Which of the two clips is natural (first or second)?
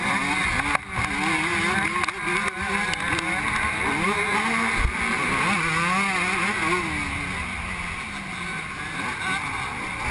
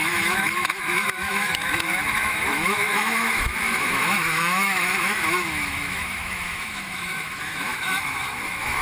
first